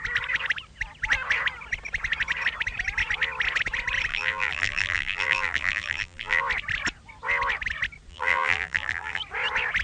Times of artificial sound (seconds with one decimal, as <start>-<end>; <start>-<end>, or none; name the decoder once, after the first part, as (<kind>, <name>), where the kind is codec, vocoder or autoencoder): 4.1-6.4 (vocoder, BigVGAN v2); 8.1-9.2